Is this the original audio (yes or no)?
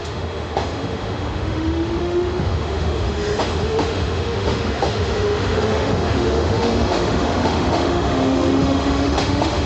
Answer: no